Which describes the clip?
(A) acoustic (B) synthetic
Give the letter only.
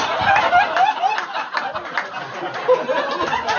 A